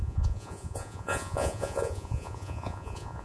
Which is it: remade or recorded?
remade